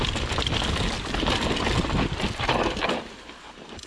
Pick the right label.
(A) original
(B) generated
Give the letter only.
A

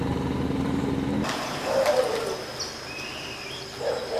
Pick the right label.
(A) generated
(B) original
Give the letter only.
B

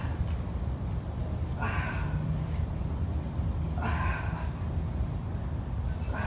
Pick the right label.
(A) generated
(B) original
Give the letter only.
B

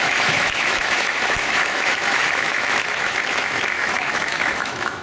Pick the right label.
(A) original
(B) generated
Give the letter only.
B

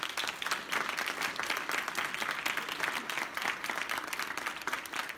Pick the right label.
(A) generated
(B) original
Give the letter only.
B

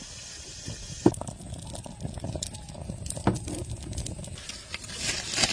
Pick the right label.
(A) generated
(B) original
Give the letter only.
B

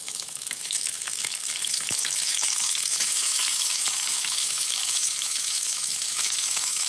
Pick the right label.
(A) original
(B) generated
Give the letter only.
B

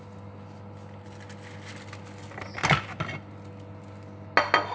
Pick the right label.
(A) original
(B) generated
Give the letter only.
A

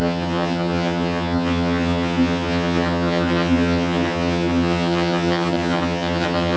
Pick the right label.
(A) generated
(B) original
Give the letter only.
A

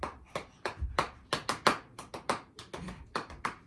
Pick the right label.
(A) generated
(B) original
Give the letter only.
B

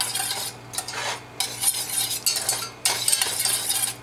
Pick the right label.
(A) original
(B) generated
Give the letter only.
A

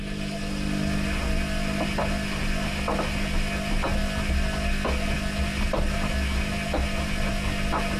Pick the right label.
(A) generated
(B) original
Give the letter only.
B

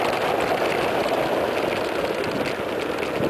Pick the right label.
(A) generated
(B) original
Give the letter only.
B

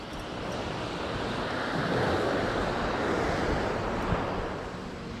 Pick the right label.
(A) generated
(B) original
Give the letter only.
B